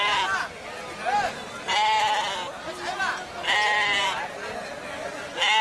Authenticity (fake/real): real